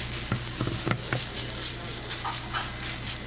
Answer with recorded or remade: recorded